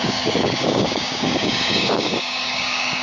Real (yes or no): no